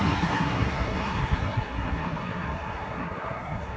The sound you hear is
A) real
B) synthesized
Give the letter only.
B